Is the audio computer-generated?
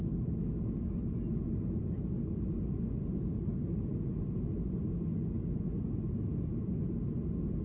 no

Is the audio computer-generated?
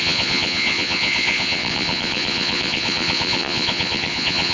yes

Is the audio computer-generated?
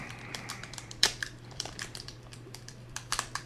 yes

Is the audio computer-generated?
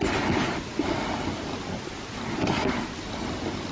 no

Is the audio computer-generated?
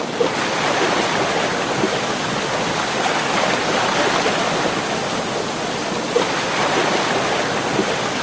no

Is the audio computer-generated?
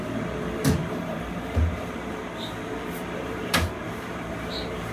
yes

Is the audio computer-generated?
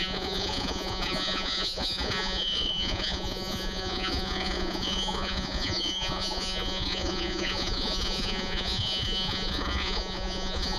yes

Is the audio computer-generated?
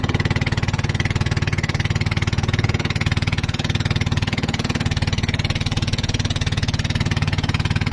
yes